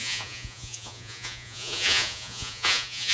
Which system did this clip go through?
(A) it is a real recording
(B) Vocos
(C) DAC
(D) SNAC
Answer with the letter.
B